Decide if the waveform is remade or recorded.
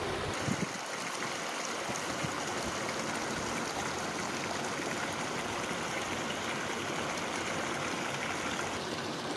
recorded